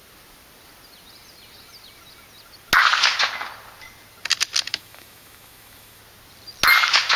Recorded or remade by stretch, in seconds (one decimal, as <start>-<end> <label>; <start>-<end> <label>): 0.0-4.7 recorded; 4.7-6.0 remade; 6.0-7.2 recorded

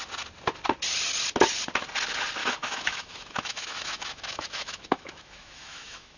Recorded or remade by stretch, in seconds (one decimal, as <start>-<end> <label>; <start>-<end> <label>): 0.0-2.4 recorded; 2.4-6.2 remade

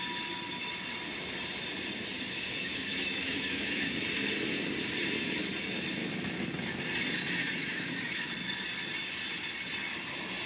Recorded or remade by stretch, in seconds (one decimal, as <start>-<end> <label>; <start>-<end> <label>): 0.0-2.6 recorded; 2.6-3.9 remade; 3.9-6.0 recorded; 6.0-6.6 remade; 6.6-7.4 recorded; 7.4-8.3 remade; 8.3-10.5 recorded

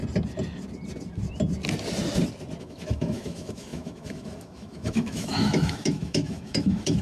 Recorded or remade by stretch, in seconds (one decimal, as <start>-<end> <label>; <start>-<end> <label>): 0.0-2.6 recorded; 2.6-7.0 remade

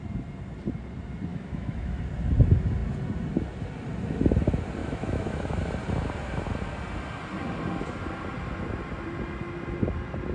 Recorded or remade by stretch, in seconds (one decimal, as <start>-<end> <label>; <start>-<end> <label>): 0.0-1.3 recorded; 1.3-2.0 remade; 2.0-4.8 recorded; 4.8-5.6 remade; 5.6-10.3 recorded

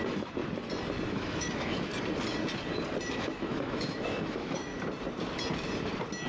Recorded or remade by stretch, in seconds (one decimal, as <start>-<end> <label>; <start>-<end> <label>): 0.0-0.4 remade; 0.4-1.1 recorded; 1.1-1.9 remade; 1.9-3.1 recorded; 3.1-4.7 remade; 4.7-6.3 recorded

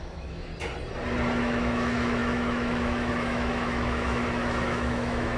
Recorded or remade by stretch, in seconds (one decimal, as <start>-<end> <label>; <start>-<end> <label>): 0.0-0.5 remade; 0.5-1.4 recorded; 1.4-5.4 remade